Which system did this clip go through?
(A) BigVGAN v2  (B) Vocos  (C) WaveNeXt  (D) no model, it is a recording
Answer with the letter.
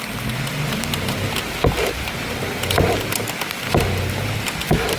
D